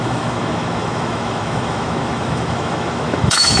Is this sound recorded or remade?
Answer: remade